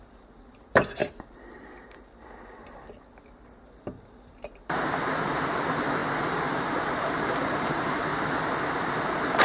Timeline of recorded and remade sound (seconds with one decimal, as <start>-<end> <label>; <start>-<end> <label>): 0.0-8.1 remade; 8.1-8.8 recorded; 8.8-9.4 remade